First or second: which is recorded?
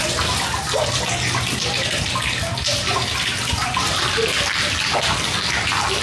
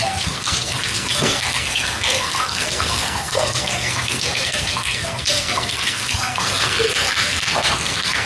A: first